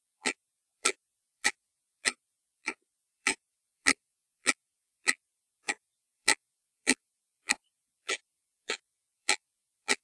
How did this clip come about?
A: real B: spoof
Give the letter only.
B